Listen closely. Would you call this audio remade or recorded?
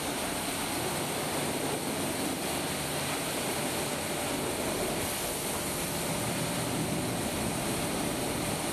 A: recorded